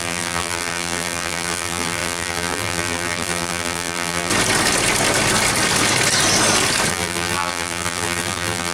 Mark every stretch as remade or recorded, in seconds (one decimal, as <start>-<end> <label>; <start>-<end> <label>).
0.0-4.3 remade; 4.3-6.9 recorded; 6.9-8.7 remade